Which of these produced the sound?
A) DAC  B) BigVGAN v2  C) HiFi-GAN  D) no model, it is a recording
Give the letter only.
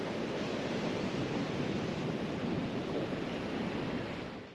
B